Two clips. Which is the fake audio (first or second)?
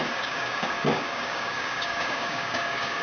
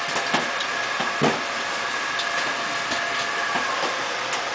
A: first